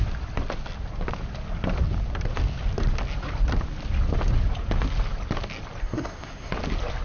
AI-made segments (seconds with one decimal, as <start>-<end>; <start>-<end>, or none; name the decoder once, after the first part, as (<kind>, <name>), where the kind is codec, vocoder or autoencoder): 5.8-6.5 (codec, SNAC)